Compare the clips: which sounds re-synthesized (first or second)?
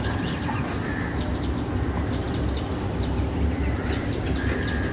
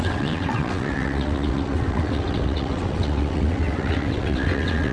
second